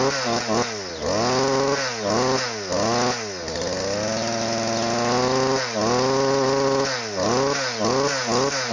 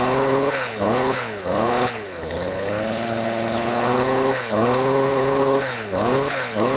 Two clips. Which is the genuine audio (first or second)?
first